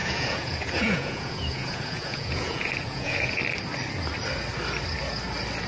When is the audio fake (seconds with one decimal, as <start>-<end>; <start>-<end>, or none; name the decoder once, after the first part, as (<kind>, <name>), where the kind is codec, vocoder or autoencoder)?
0.0-3.4 (vocoder, Vocos)